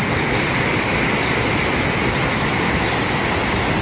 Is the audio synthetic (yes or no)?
no